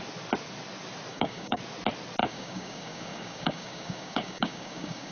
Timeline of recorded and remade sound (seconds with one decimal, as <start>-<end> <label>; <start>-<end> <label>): 0.0-1.1 recorded; 1.1-1.6 remade; 1.6-2.2 recorded; 2.2-5.1 remade